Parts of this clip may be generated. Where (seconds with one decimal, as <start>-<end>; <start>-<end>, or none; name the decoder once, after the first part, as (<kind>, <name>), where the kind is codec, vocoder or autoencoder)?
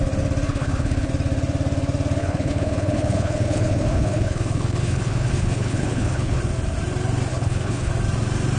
0.5-1.1 (codec, HILCodec); 2.2-6.4; 7.3-7.9